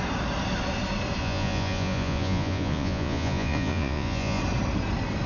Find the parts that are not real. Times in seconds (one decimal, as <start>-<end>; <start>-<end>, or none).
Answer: 1.2-4.4